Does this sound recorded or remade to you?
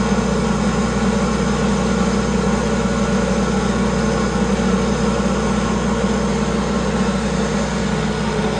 recorded